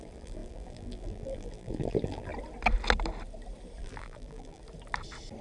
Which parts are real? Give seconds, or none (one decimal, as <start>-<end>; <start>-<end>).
2.3-3.8; 4.6-5.4